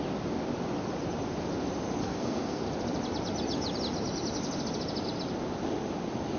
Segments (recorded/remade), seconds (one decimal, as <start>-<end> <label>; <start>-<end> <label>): 0.0-2.0 recorded; 2.0-2.6 remade; 2.6-6.4 recorded